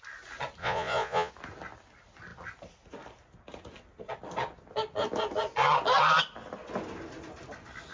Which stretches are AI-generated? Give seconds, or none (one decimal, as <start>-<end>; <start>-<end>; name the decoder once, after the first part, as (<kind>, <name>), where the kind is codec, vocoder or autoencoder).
0.6-1.3 (vocoder, Vocos)